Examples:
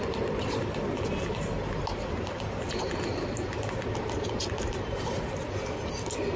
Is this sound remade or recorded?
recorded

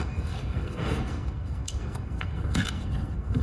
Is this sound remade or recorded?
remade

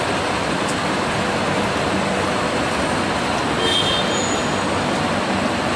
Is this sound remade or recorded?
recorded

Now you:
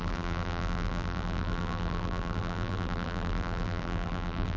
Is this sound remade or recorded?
remade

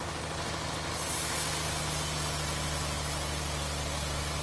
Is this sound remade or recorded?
recorded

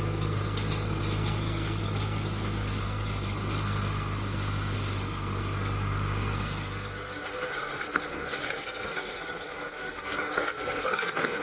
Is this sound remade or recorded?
remade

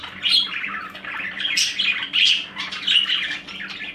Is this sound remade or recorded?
recorded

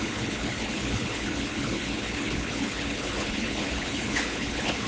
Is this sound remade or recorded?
remade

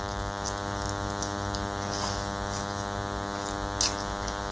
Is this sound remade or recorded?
recorded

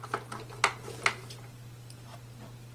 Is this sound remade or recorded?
recorded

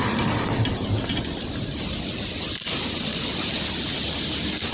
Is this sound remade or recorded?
recorded